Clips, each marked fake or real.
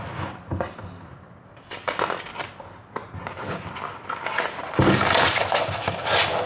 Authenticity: real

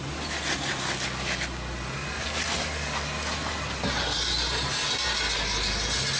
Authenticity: real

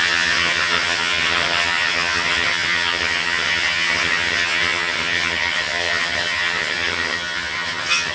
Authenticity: fake